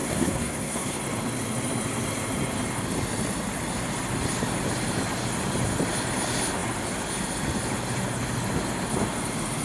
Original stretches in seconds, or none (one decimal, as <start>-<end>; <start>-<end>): 1.0-9.6